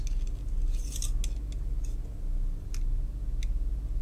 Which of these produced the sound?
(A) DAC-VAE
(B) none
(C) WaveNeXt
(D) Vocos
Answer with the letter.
B